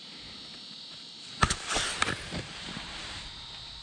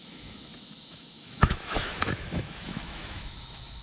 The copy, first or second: second